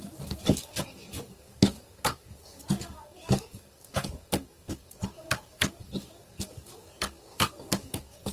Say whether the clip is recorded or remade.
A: remade